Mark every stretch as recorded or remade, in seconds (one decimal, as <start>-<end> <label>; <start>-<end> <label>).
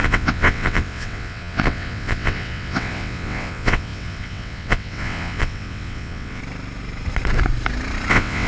0.0-6.4 remade; 6.4-8.1 recorded; 8.1-8.5 remade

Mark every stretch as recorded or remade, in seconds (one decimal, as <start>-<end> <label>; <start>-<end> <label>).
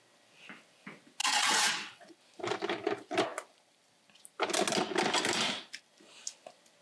0.0-1.2 recorded; 1.2-2.1 remade; 2.1-6.8 recorded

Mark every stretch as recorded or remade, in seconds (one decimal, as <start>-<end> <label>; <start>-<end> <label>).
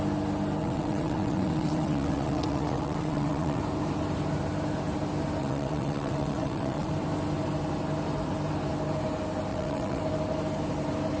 0.0-0.6 recorded; 0.6-3.6 remade; 3.6-5.4 recorded; 5.4-6.9 remade; 6.9-9.5 recorded; 9.5-10.0 remade; 10.0-11.2 recorded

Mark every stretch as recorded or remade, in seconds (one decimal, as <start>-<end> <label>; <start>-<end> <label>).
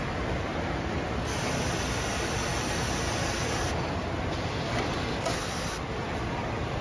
0.0-6.8 recorded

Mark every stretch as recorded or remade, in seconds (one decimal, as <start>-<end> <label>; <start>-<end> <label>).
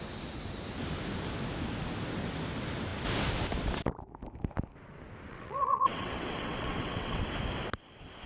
0.0-5.3 recorded; 5.3-7.2 remade; 7.2-8.3 recorded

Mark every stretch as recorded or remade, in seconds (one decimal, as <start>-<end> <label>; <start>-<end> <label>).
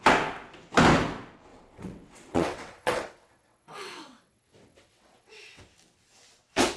0.0-1.5 recorded; 1.5-5.6 remade; 5.6-6.8 recorded